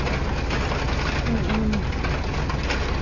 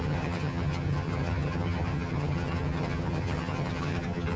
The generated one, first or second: second